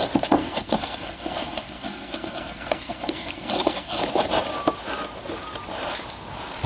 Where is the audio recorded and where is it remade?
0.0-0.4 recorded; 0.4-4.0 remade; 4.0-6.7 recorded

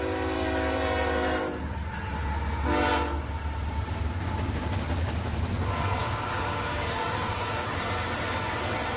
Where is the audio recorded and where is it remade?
0.0-6.0 recorded; 6.0-7.8 remade; 7.8-9.0 recorded

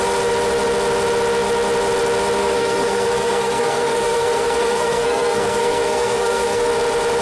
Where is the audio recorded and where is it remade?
0.0-2.4 recorded; 2.4-6.7 remade; 6.7-7.2 recorded

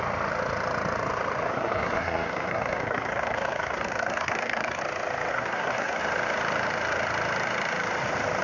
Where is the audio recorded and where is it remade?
0.0-1.5 recorded; 1.5-4.8 remade; 4.8-5.3 recorded; 5.3-6.0 remade; 6.0-8.4 recorded

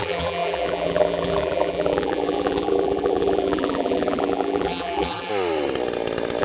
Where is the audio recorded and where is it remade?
0.0-5.3 remade; 5.3-6.4 recorded

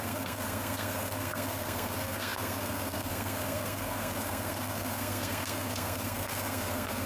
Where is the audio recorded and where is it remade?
0.0-7.1 remade

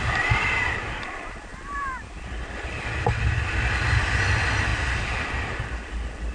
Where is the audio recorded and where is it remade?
0.0-6.3 remade

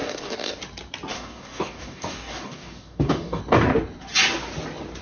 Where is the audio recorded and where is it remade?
0.0-0.6 remade; 0.6-1.1 recorded; 1.1-3.4 remade; 3.4-5.0 recorded